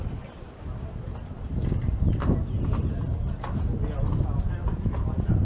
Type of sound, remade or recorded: recorded